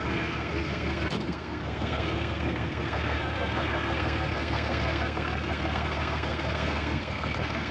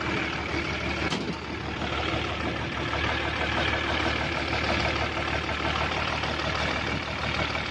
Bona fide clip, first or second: second